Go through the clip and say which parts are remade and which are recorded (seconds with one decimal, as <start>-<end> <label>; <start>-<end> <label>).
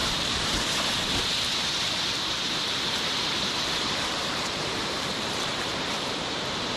0.0-0.6 remade; 0.6-2.4 recorded; 2.4-6.8 remade